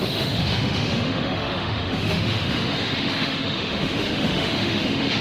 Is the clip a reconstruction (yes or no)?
yes